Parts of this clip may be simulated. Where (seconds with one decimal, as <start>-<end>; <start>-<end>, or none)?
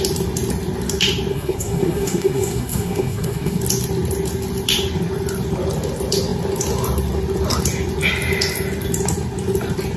1.3-3.6